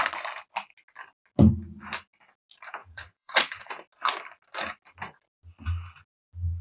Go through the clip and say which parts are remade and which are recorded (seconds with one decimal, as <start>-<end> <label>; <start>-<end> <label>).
0.0-2.8 recorded; 2.8-3.7 remade; 3.7-6.6 recorded